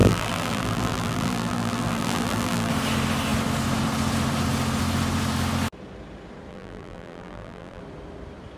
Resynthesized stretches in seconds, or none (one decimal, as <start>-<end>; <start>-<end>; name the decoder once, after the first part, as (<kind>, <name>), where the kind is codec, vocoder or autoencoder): 0.0-2.7 (vocoder, BigVGAN v2); 6.5-7.8